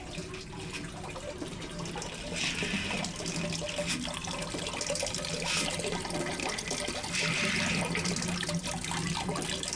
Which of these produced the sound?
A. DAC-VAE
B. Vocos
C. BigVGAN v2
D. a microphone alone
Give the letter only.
D